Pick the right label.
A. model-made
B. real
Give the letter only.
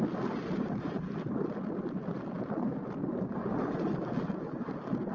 B